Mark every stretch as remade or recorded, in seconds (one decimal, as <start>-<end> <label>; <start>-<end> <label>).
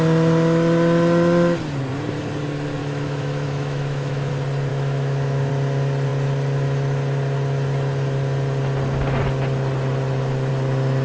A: 0.0-2.8 recorded; 2.8-4.3 remade; 4.3-4.7 recorded; 4.7-5.5 remade; 5.5-11.0 recorded